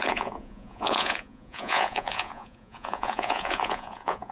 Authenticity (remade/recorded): remade